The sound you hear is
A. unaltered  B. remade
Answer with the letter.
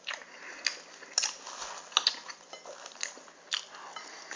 A